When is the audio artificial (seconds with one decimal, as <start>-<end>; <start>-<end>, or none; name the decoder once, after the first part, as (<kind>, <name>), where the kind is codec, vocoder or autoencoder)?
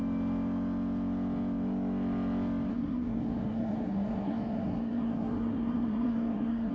2.7-6.7 (codec, SNAC)